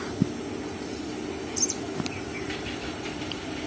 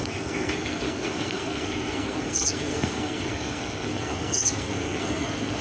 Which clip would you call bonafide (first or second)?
first